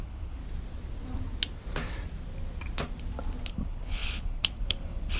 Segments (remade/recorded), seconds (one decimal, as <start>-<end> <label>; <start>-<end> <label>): 0.0-0.4 remade; 0.4-3.5 recorded; 3.5-5.2 remade